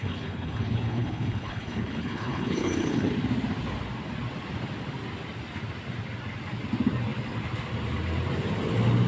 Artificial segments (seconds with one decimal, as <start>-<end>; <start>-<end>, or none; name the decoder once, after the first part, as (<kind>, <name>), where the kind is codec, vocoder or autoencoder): 0.0-3.1 (codec, HILCodec)

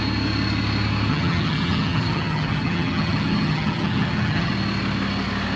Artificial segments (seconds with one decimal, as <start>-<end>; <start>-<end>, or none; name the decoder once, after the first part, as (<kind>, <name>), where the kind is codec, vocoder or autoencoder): 1.1-4.5 (vocoder, HiFi-GAN)

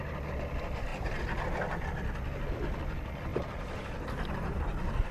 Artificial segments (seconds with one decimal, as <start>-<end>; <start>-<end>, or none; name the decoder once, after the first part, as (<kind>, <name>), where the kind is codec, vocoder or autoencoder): 3.3-5.1 (vocoder, BigVGAN v2)

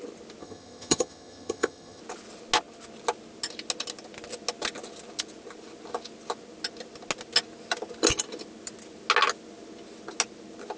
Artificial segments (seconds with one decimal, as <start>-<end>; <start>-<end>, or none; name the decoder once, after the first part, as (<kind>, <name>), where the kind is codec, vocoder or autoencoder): 0.4-2.0 (vocoder, HiFi-GAN)

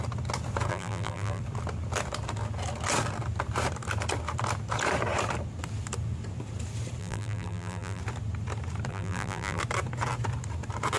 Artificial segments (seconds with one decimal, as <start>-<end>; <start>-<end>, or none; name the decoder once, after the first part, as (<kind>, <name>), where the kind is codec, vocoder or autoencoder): 0.7-1.4 (vocoder, BigVGAN v2); 7.0-8.0; 8.9-9.6

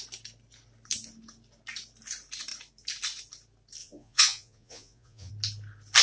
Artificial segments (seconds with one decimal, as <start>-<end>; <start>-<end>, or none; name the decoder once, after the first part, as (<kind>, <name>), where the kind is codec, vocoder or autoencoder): 3.8-5.3 (vocoder, Vocos)

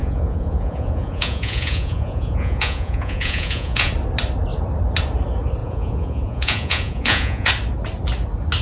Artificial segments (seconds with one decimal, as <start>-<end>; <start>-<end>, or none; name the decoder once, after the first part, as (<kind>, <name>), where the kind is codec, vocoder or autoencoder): 0.0-3.9 (vocoder, Vocos); 5.6-7.5

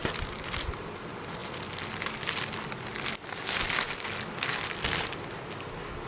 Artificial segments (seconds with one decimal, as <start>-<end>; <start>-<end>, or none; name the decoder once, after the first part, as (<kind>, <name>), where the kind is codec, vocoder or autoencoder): none